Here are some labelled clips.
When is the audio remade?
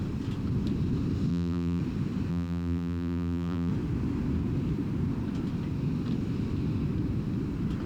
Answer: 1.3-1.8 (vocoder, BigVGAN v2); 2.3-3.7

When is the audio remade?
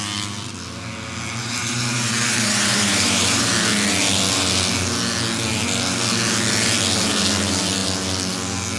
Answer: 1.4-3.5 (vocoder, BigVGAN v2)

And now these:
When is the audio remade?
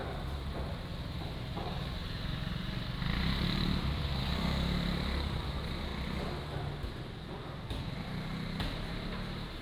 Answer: 0.0-5.9 (vocoder, BigVGAN v2); 7.6-9.6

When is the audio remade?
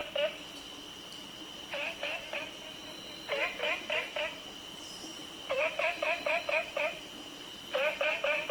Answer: 0.0-2.4 (vocoder, BigVGAN v2); 5.1-6.4